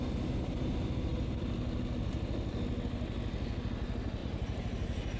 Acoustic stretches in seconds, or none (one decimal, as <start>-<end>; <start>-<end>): 0.0-4.2